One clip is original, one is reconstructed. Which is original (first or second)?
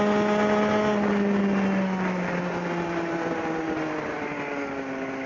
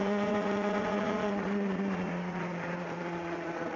first